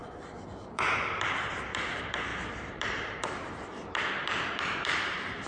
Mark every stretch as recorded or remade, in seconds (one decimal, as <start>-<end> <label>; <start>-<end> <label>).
0.0-0.6 recorded; 0.6-5.5 remade